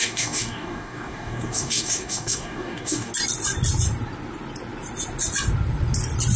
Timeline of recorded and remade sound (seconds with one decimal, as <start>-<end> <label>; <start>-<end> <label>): 0.0-3.1 remade; 3.1-6.4 recorded